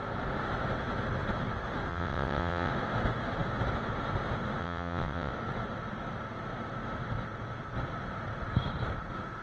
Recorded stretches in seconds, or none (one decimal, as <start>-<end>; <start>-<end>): 0.0-1.9; 2.7-4.6; 5.3-9.4